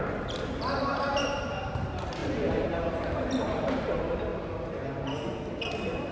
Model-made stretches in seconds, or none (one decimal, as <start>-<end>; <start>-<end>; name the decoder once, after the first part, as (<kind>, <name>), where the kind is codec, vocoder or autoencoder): 0.0-4.3 (vocoder, BigVGAN v2); 5.6-6.1